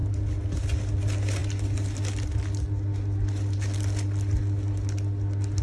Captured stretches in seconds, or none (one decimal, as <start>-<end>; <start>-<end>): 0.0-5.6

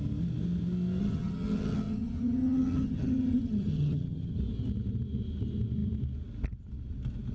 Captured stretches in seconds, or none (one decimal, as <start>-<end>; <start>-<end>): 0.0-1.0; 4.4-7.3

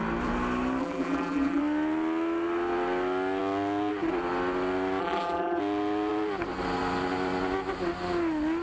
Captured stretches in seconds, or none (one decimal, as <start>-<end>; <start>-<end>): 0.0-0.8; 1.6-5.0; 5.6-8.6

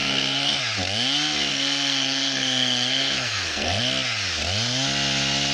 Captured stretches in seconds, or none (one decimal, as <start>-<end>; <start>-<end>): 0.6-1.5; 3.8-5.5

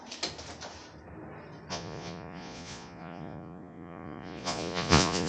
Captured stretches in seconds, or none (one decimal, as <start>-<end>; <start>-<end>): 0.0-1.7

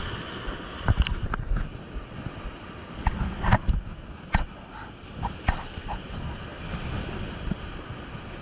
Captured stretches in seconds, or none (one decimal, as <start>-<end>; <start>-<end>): 0.0-8.4

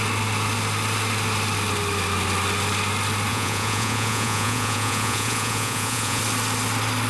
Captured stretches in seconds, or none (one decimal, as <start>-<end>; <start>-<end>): 0.0-3.3; 6.2-7.1

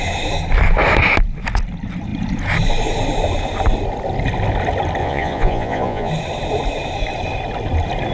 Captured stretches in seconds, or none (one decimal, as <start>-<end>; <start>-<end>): 0.0-5.0; 6.1-8.1